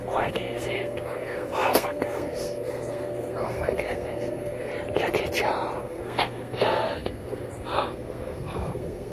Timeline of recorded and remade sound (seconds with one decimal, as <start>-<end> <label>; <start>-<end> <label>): 0.0-4.7 remade; 4.7-5.8 recorded; 5.8-9.1 remade